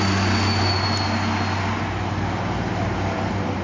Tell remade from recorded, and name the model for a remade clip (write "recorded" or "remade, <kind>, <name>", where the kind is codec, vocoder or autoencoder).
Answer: recorded